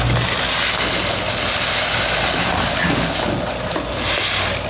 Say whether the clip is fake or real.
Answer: real